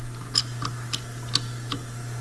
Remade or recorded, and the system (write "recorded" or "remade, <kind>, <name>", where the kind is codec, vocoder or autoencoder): recorded